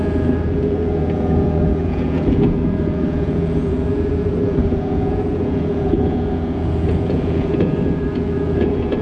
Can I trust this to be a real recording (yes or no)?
no